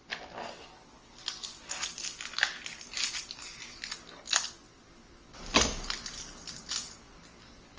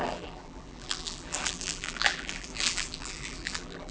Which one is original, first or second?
first